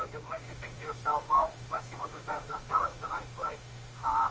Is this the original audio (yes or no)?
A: no